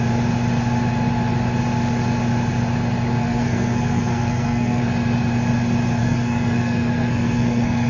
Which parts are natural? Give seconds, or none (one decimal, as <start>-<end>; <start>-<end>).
0.0-3.2; 4.8-6.0